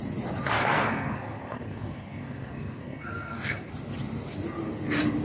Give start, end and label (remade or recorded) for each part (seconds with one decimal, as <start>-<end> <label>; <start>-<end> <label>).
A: 0.0-0.6 recorded; 0.6-3.7 remade; 3.7-5.2 recorded